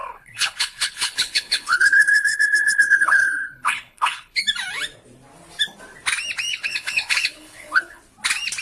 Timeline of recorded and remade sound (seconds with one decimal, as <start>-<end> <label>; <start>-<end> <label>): 0.0-4.4 remade; 4.4-6.5 recorded; 6.5-8.0 remade; 8.0-8.6 recorded